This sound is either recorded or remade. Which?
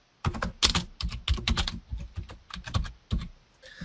recorded